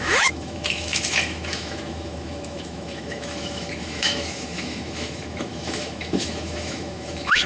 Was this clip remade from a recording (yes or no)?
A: yes